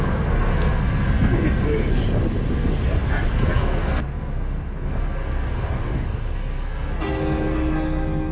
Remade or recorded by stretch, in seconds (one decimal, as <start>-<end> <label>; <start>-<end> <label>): 0.0-2.0 remade; 2.0-2.5 recorded; 2.5-8.3 remade